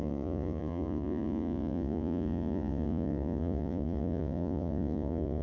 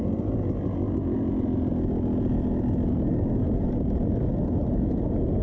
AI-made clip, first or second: first